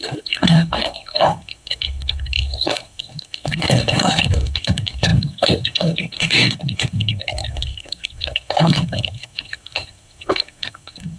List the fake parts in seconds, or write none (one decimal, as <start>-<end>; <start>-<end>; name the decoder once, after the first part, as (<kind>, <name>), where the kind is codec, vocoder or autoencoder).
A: 0.0-11.2 (codec, SNAC)